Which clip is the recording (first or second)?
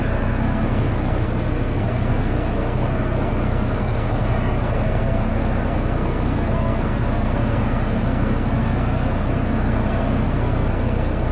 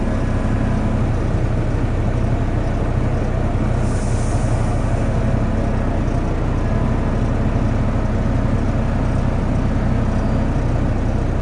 second